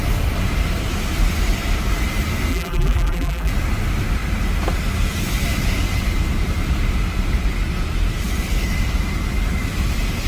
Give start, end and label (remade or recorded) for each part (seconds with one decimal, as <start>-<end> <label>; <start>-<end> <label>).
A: 0.0-2.5 recorded; 2.5-3.5 remade; 3.5-10.3 recorded